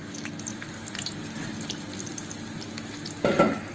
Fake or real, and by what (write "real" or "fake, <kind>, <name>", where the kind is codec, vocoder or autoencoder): real